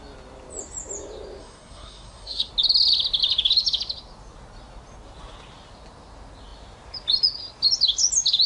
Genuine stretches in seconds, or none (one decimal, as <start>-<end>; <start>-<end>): 0.0-1.4; 2.5-8.5